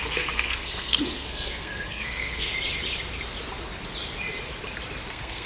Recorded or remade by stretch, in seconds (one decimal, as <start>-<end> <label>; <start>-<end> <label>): 0.0-2.5 remade; 2.5-5.1 recorded; 5.1-5.5 remade